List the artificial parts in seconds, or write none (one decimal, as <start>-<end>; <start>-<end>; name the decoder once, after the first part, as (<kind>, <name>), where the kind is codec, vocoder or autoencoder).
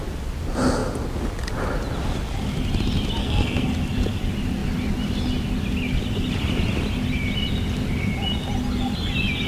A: 3.2-3.7 (codec, SNAC)